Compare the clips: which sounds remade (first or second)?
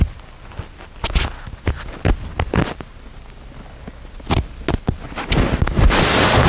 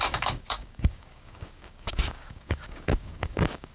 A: second